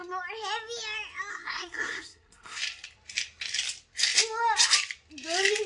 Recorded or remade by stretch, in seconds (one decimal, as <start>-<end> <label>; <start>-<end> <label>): 0.0-1.3 recorded; 1.3-2.6 remade; 2.6-5.7 recorded